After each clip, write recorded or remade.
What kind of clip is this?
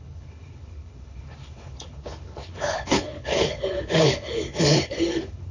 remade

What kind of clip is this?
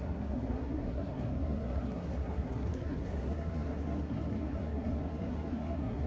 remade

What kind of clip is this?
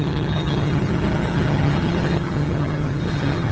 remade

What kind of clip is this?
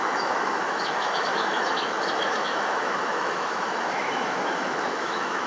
remade